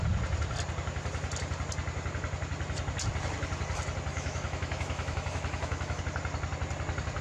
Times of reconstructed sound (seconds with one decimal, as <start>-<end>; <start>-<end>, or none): 4.1-6.0